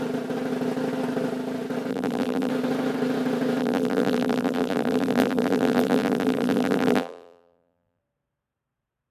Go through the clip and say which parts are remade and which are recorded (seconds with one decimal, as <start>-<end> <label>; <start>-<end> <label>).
0.0-1.9 recorded; 1.9-2.5 remade; 2.5-3.6 recorded; 3.6-8.0 remade; 8.0-9.1 recorded